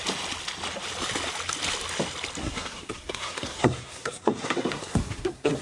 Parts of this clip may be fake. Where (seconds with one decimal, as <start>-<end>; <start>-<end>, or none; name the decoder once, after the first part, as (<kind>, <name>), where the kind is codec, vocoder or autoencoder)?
2.4-5.6 (codec, SNAC)